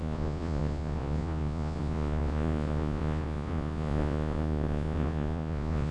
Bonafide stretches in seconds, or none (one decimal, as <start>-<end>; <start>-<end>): none